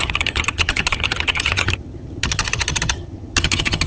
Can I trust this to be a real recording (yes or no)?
no